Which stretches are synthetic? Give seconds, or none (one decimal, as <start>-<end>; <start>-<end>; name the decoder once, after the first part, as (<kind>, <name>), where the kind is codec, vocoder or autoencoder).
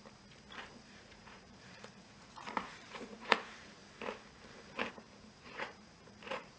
0.9-3.8 (vocoder, Vocos); 4.9-6.6